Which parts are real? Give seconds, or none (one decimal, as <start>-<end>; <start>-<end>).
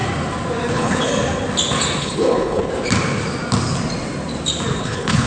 0.0-0.7; 1.1-2.0; 2.7-4.8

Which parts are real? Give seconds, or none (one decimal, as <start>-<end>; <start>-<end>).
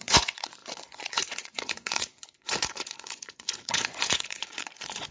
none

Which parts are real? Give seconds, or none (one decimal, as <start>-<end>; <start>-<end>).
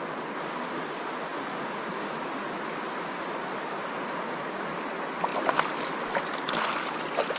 0.0-1.3; 2.5-3.8; 4.6-7.4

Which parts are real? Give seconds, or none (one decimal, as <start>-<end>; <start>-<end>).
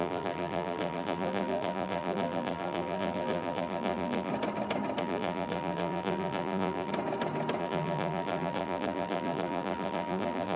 4.3-5.0; 6.9-7.6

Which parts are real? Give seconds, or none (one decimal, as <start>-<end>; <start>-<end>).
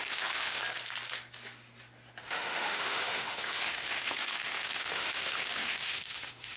0.6-2.2